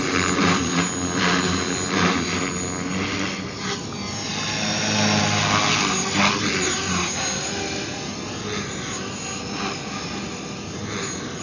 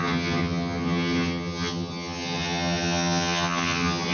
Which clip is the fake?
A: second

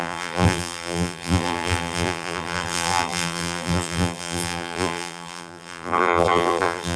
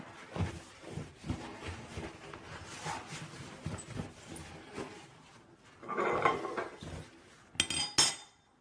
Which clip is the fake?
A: first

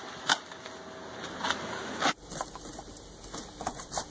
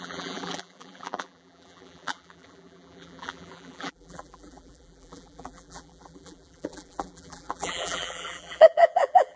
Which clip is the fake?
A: second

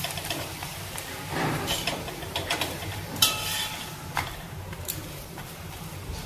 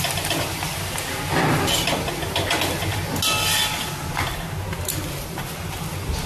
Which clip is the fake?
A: first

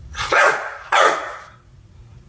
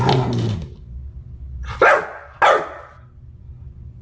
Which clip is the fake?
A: first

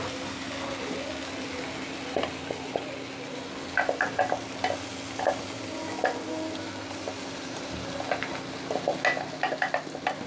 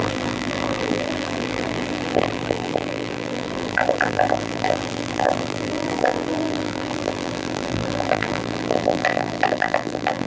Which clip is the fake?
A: second